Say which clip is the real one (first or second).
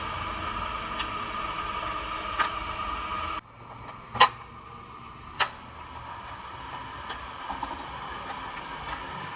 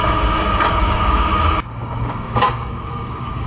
first